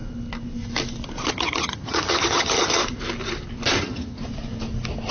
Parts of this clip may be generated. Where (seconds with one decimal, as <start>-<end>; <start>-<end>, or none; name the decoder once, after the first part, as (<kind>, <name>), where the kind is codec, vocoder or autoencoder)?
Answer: 1.3-2.8 (vocoder, HiFi-GAN); 3.8-4.2